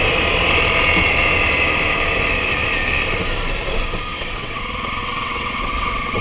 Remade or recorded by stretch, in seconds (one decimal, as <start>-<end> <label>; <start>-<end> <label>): 0.0-4.1 recorded; 4.1-4.6 remade; 4.6-5.0 recorded; 5.0-6.2 remade

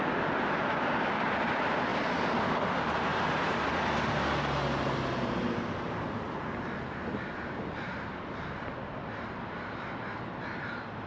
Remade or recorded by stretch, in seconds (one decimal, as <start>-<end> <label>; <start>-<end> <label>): 0.0-3.1 recorded; 3.1-3.9 remade; 3.9-11.1 recorded

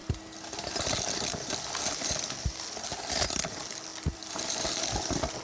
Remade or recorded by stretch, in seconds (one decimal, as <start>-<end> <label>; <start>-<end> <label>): 0.0-3.2 remade; 3.2-3.9 recorded; 3.9-5.4 remade

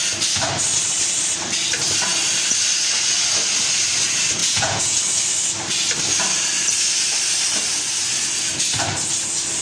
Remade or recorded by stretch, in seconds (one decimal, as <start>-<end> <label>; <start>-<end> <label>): 0.0-4.4 recorded; 4.4-5.0 remade; 5.0-9.6 recorded

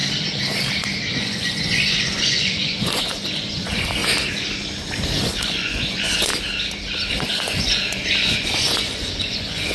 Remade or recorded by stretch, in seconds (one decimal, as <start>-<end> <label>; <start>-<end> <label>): 0.0-1.1 recorded; 1.1-4.0 remade; 4.0-5.2 recorded; 5.2-6.3 remade; 6.3-7.1 recorded; 7.1-9.7 remade

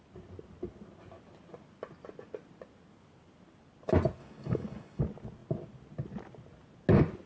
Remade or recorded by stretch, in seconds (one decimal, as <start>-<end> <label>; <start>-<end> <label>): 0.0-4.2 recorded; 4.2-5.0 remade; 5.0-7.3 recorded